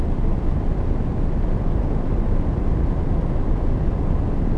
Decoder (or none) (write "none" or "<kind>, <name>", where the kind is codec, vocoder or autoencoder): none